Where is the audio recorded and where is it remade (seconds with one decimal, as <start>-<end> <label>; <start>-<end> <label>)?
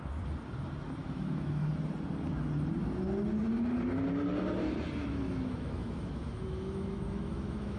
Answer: 0.0-1.0 recorded; 1.0-1.7 remade; 1.7-5.0 recorded; 5.0-7.8 remade